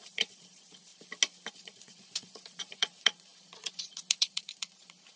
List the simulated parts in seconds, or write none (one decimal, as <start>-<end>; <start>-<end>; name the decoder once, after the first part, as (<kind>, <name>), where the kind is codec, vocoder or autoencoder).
0.0-0.9 (vocoder, Vocos); 1.5-5.2